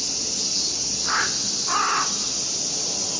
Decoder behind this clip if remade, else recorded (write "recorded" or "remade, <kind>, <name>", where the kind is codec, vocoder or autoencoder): recorded